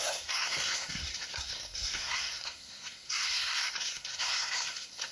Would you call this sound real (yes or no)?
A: no